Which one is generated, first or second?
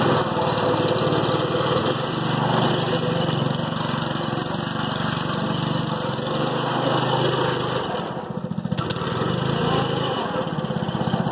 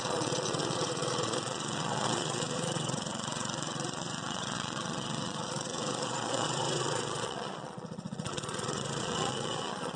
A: second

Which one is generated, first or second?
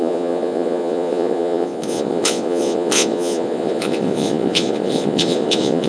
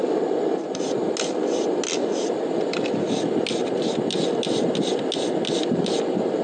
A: first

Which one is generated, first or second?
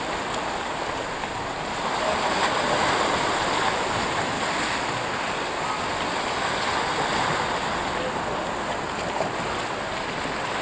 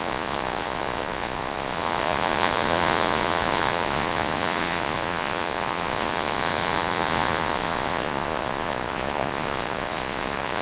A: second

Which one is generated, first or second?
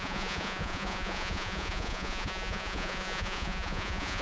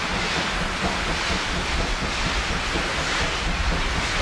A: first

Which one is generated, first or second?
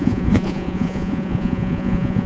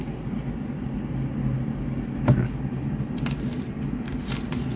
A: first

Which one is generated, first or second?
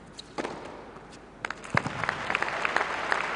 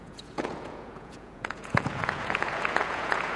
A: second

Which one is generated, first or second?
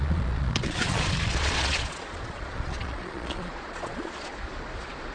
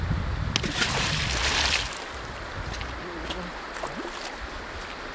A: first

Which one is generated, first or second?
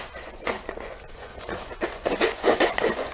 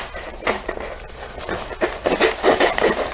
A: first